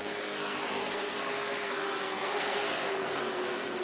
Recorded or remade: remade